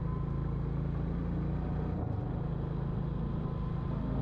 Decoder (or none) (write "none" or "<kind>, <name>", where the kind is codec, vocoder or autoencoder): none